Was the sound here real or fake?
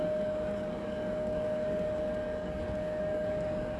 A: fake